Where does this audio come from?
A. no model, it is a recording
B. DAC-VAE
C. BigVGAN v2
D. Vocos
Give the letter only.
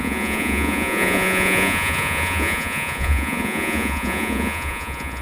D